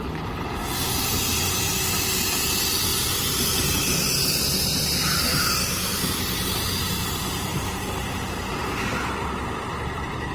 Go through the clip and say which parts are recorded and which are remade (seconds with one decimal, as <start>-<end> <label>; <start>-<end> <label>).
0.0-0.6 remade; 0.6-1.4 recorded; 1.4-5.9 remade; 5.9-6.4 recorded; 6.4-10.3 remade